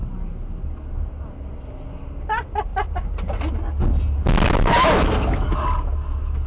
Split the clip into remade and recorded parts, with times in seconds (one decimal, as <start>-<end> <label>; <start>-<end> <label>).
0.0-6.5 recorded